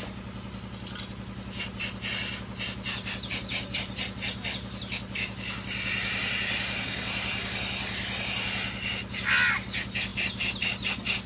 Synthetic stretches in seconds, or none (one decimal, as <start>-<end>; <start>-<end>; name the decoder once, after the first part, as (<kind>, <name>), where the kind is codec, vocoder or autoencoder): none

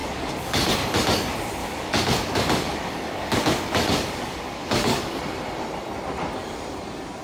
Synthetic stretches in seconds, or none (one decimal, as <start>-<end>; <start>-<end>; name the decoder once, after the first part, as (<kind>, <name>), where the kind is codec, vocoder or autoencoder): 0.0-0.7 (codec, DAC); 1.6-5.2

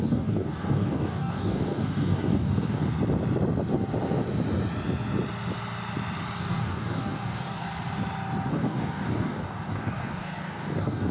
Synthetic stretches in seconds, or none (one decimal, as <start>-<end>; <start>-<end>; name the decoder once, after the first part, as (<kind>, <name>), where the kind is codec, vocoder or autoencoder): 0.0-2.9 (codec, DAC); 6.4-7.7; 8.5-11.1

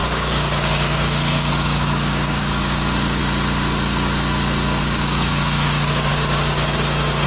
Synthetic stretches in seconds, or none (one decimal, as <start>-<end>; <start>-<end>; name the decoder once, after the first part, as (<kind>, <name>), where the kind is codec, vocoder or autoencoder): 0.0-3.2 (codec, DAC); 4.8-7.3

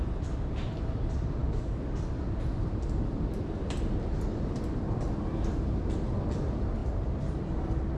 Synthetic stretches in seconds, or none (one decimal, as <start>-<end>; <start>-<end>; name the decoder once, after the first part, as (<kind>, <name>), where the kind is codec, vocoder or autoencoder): 1.4-2.0 (codec, DAC)